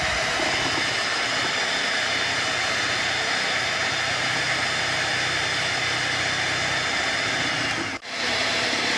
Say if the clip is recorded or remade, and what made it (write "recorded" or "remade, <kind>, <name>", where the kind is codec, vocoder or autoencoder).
recorded